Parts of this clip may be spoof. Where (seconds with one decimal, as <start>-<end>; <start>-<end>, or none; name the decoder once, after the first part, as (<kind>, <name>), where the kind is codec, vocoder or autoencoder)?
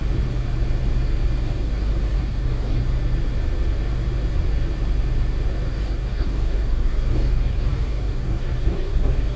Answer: 1.4-2.8 (codec, DAC); 5.7-9.4